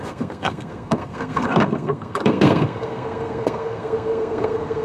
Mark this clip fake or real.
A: fake